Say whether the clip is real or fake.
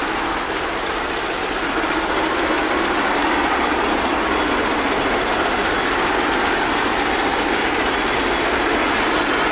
real